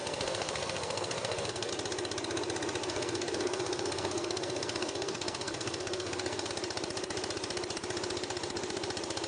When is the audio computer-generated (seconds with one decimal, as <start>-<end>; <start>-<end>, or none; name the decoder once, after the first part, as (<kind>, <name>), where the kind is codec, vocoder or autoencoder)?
0.0-1.7 (codec, SNAC); 2.8-6.5